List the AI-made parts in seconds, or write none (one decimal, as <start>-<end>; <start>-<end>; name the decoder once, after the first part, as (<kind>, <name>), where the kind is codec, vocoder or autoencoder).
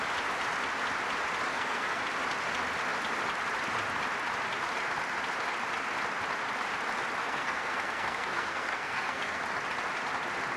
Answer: 1.5-2.0 (codec, SNAC); 7.2-9.4